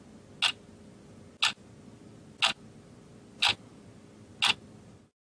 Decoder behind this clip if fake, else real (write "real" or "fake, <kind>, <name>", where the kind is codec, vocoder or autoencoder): real